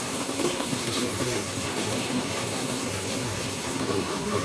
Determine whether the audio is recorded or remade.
remade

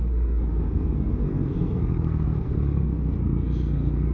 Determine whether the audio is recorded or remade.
remade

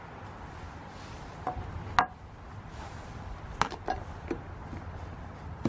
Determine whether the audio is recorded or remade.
recorded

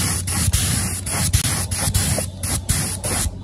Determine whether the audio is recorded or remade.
recorded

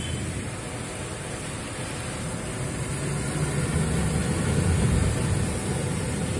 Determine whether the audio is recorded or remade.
recorded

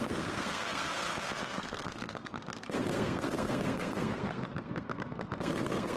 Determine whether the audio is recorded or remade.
remade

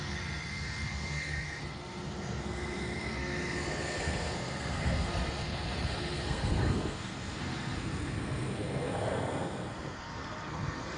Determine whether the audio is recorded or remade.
remade